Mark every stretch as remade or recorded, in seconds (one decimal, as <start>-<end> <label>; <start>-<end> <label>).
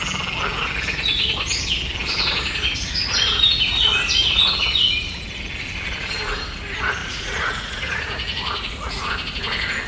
0.0-7.0 recorded; 7.0-9.1 remade; 9.1-9.9 recorded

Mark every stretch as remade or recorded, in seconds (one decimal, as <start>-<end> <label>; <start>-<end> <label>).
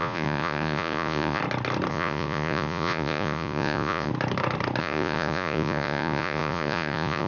0.0-1.4 remade; 1.4-1.9 recorded; 1.9-4.1 remade; 4.1-4.8 recorded; 4.8-7.3 remade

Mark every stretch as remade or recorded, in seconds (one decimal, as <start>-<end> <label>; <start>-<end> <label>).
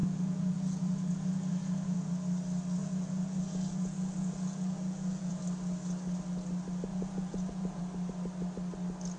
0.0-2.1 remade; 2.1-2.8 recorded; 2.8-5.4 remade; 5.4-6.9 recorded; 6.9-7.8 remade; 7.8-9.2 recorded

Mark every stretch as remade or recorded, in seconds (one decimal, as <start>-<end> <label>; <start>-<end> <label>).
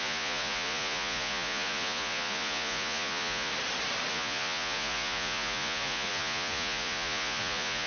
0.0-3.5 remade; 3.5-4.1 recorded; 4.1-7.9 remade